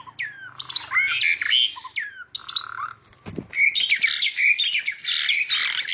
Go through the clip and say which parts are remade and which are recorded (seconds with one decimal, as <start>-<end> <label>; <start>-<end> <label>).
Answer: 0.0-5.9 recorded